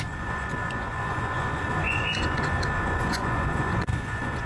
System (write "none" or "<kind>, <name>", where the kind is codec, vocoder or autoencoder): vocoder, Vocos